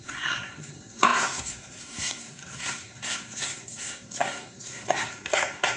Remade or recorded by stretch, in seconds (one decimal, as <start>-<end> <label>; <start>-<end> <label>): 0.0-5.8 remade